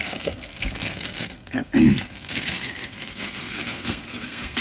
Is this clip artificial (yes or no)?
yes